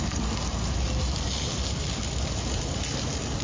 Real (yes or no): yes